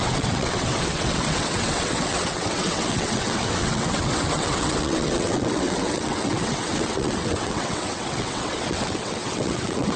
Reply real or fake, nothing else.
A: fake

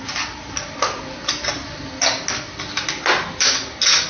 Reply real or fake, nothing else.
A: real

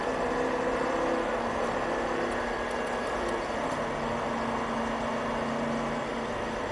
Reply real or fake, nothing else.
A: real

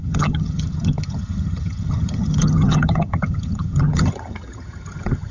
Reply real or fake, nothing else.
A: fake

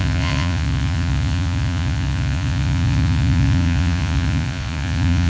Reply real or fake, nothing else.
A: fake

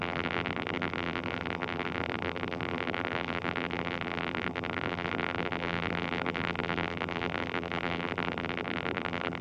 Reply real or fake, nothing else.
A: fake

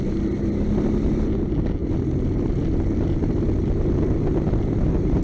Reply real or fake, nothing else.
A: real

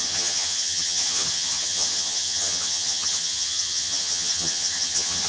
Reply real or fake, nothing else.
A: fake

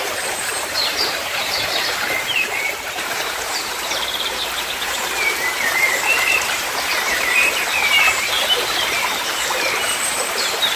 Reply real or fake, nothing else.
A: fake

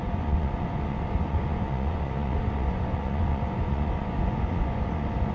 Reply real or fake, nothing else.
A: fake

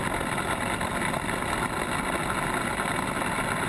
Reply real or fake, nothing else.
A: real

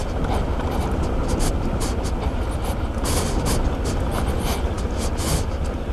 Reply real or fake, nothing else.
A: real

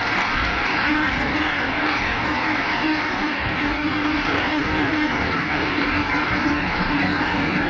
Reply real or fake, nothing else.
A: fake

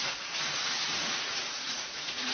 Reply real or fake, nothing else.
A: fake